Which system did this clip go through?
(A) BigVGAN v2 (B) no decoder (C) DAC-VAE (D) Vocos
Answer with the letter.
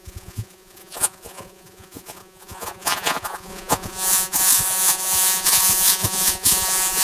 D